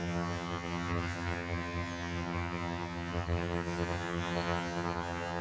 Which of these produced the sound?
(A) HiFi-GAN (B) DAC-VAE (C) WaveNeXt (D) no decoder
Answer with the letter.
A